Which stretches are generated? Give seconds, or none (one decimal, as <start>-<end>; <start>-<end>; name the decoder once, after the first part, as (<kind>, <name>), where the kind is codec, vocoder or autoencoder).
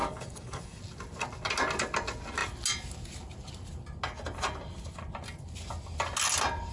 0.0-0.8 (codec, DAC)